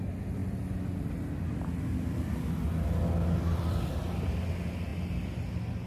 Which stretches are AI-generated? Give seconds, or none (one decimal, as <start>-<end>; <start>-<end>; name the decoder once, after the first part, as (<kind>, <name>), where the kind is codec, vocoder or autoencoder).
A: none